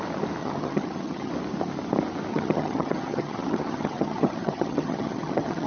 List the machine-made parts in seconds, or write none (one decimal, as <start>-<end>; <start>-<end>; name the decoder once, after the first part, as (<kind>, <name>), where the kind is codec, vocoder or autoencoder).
0.4-1.3 (vocoder, HiFi-GAN); 2.3-5.7